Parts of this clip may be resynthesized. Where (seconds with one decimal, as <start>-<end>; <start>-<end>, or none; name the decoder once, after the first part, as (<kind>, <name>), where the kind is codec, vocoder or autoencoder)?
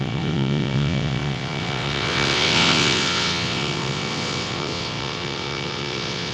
0.0-6.3 (vocoder, WaveNeXt)